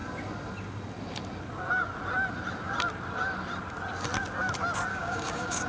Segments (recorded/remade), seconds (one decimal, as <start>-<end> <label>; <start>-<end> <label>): 0.0-4.9 recorded; 4.9-5.7 remade